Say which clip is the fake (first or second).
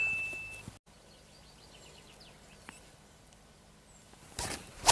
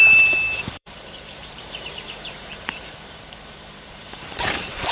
second